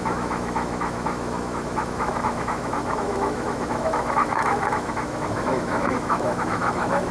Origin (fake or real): fake